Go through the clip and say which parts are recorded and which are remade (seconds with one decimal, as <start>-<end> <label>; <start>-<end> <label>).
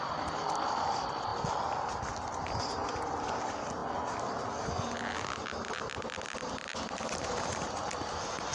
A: 0.0-1.3 recorded; 1.3-2.6 remade; 2.6-3.8 recorded; 3.8-4.5 remade; 4.5-8.5 recorded